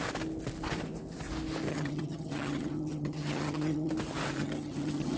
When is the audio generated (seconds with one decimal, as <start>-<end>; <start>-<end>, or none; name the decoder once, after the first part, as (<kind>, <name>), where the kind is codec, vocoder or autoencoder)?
1.7-3.9 (vocoder, HiFi-GAN); 4.4-5.2